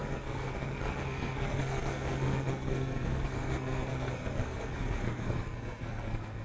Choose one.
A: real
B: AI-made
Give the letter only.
B